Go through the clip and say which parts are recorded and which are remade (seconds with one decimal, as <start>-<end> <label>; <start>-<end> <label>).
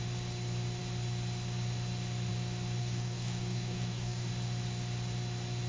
0.0-2.8 recorded; 2.8-4.3 remade; 4.3-5.7 recorded